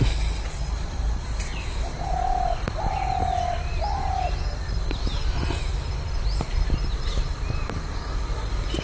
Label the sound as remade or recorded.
recorded